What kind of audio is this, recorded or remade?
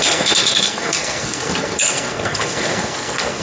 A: remade